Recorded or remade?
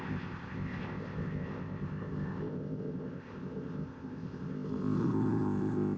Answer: remade